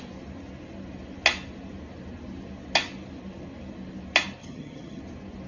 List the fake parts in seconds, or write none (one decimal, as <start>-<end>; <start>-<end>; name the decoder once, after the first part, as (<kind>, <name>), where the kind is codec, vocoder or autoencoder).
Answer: 4.4-5.0 (vocoder, HiFi-GAN)